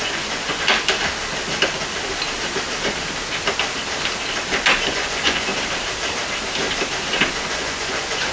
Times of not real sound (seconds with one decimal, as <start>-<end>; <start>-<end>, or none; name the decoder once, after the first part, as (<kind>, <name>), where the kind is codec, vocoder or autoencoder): 0.0-0.7 (vocoder, Vocos); 4.9-5.5; 7.3-8.3

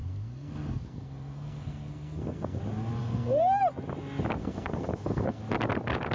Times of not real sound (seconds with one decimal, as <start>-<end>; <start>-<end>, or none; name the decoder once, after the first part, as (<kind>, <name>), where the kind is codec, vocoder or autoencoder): 0.0-2.6 (codec, SNAC); 3.0-3.6; 4.4-5.4

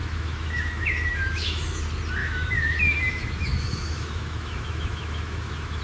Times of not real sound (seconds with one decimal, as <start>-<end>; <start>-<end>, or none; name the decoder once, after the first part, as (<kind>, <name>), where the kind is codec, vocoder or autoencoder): 0.0-1.8 (autoencoder, DAC-VAE); 2.2-5.8

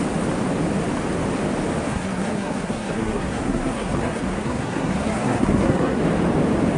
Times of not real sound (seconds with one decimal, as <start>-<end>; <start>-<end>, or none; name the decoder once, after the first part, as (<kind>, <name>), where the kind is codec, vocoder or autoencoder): 1.9-6.0 (codec, SNAC)

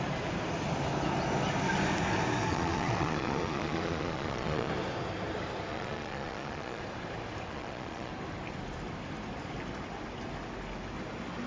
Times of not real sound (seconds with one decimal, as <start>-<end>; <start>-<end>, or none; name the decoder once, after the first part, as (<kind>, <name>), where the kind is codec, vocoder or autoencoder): 2.5-4.7 (vocoder, Vocos); 5.7-6.8; 7.5-8.1